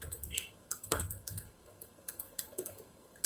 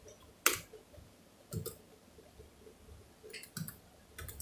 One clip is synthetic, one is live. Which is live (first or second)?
second